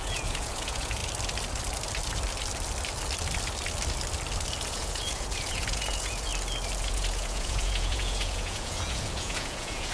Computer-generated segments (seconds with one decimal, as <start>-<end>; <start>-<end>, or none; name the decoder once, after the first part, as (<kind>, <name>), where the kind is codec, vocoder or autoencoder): 0.0-1.0 (vocoder, Vocos); 4.7-6.3; 6.8-9.9